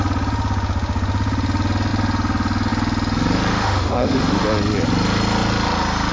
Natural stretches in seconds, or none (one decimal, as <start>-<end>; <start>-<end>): 0.0-3.5; 4.4-6.1